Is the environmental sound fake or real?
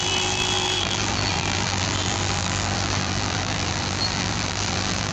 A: fake